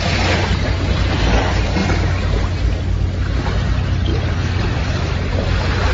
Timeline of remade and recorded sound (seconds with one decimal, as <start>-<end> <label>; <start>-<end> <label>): 0.0-4.1 recorded; 4.1-5.2 remade; 5.2-5.9 recorded